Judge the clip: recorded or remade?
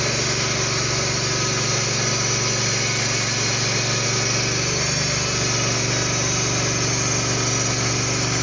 recorded